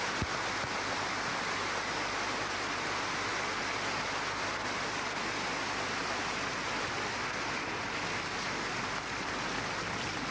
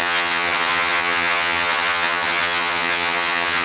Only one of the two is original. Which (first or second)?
first